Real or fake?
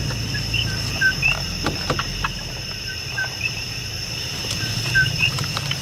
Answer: fake